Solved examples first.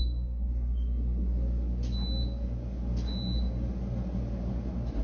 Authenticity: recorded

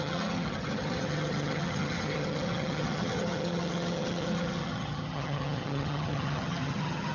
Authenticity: remade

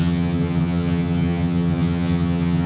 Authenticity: remade